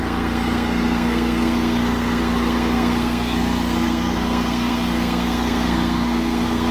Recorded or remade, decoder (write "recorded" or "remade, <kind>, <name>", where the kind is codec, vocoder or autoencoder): remade, codec, SNAC